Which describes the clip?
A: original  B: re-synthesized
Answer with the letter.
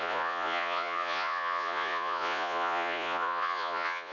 B